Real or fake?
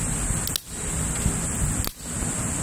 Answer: real